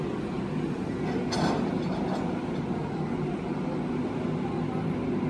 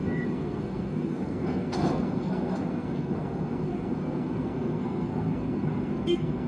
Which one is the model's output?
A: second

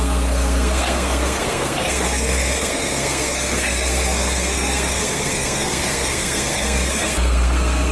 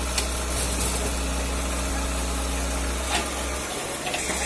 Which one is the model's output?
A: first